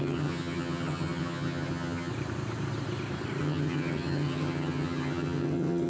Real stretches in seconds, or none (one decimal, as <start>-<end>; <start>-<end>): 2.1-3.4